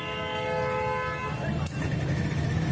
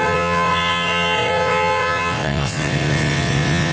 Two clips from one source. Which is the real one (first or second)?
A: first